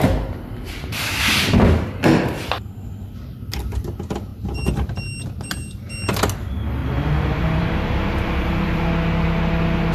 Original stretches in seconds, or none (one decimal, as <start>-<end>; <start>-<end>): 0.0-4.3; 5.9-6.8; 8.9-9.9